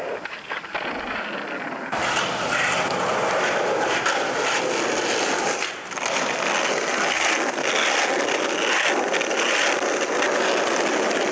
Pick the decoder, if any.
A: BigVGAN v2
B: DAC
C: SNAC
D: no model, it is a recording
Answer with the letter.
D